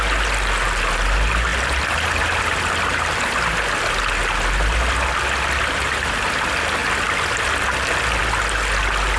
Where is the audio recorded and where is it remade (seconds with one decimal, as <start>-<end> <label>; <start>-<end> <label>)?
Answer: 0.0-9.2 recorded